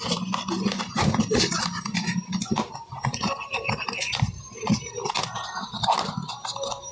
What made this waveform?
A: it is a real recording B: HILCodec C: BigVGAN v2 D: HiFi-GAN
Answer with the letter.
C